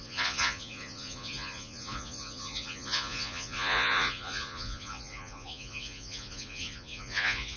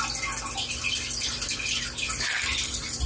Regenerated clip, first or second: first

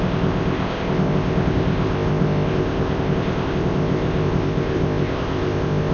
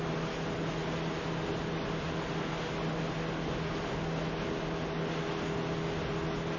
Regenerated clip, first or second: first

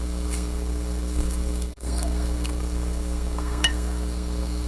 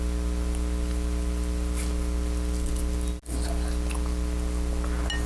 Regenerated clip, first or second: first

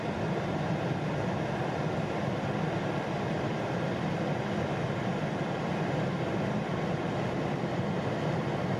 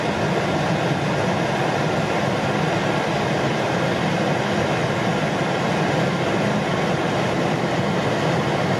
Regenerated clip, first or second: first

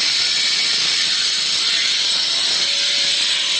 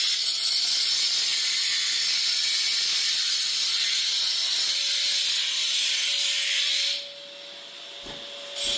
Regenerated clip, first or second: first